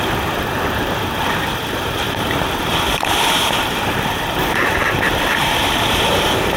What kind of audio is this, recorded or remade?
remade